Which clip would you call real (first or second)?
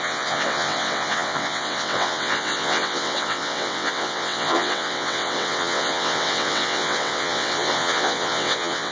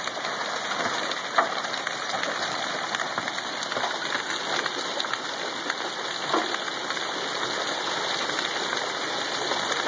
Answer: second